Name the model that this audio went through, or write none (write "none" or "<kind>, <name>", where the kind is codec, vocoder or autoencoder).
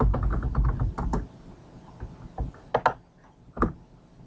none